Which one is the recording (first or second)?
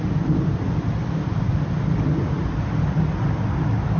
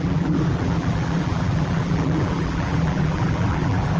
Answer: first